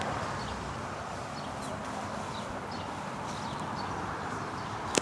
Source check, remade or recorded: recorded